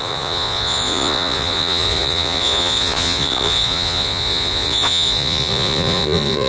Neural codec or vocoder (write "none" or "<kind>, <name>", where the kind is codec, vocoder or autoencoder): vocoder, Vocos